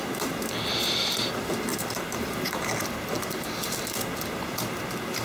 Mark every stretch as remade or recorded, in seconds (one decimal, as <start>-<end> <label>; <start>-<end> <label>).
0.0-1.7 recorded; 1.7-4.8 remade; 4.8-5.2 recorded